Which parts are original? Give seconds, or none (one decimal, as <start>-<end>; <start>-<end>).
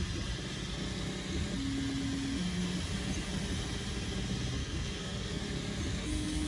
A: 0.0-4.6; 5.4-5.9